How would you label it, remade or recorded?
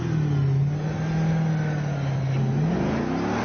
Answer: recorded